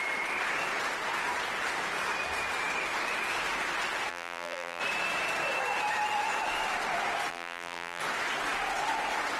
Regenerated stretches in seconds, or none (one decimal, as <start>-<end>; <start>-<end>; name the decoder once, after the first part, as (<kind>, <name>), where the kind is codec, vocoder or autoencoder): 4.1-4.8 (vocoder, BigVGAN v2); 7.3-8.0

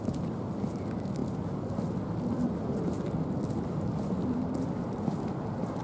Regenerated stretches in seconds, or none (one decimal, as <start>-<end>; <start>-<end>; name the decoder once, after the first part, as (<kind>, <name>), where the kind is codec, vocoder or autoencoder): none

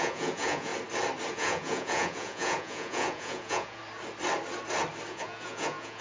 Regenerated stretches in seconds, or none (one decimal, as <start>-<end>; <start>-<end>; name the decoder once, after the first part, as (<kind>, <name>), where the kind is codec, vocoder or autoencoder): 0.0-0.7 (vocoder, Vocos); 1.3-3.8; 5.1-6.0

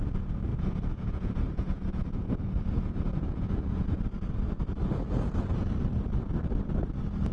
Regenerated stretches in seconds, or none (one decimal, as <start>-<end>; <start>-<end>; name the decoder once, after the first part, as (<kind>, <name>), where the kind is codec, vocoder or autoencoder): 0.5-4.0 (vocoder, Vocos)

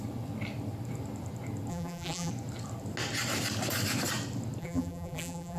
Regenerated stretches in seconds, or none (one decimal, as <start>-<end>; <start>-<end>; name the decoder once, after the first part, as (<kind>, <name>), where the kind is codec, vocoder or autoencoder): 1.7-2.3 (vocoder, BigVGAN v2); 4.6-5.6

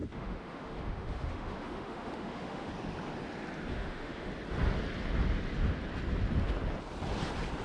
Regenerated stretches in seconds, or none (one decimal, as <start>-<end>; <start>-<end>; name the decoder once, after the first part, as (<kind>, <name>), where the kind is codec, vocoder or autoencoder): 0.0-2.7 (autoencoder, DAC-VAE); 3.7-4.3

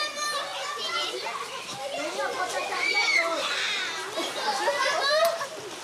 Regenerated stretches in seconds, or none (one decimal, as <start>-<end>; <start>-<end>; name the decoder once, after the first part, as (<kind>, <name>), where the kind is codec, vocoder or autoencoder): none